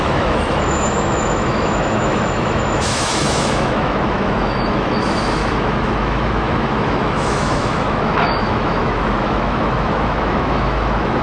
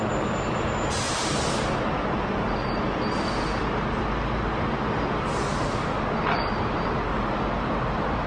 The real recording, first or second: second